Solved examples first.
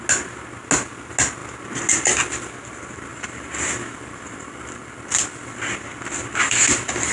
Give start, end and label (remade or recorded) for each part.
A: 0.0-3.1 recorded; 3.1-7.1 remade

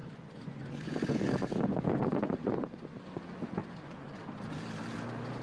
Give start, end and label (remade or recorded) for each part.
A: 0.0-3.2 remade; 3.2-3.6 recorded; 3.6-4.2 remade; 4.2-5.4 recorded

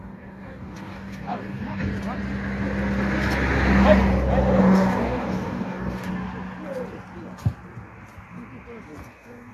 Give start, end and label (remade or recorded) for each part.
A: 0.0-1.9 remade; 1.9-4.6 recorded; 4.6-6.1 remade; 6.1-9.0 recorded; 9.0-9.5 remade

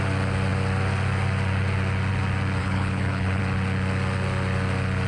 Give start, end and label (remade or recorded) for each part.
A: 0.0-2.6 recorded; 2.6-3.4 remade; 3.4-5.1 recorded

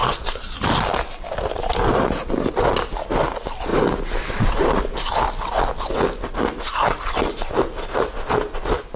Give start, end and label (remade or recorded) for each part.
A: 0.0-9.0 recorded

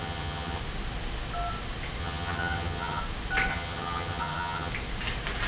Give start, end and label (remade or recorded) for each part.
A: 0.0-0.6 remade; 0.6-2.0 recorded; 2.0-3.0 remade; 3.0-3.5 recorded; 3.5-4.7 remade; 4.7-5.5 recorded

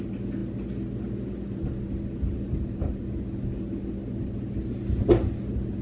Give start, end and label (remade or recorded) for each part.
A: 0.0-5.8 recorded

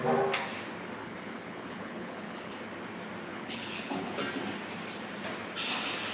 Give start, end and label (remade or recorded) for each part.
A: 0.0-1.0 recorded; 1.0-2.6 remade; 2.6-3.3 recorded; 3.3-4.2 remade; 4.2-6.1 recorded